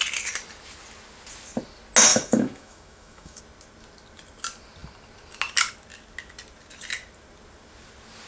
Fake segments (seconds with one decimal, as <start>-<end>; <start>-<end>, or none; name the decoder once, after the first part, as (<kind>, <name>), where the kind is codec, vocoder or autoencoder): 2.1-3.4 (autoencoder, DAC-VAE)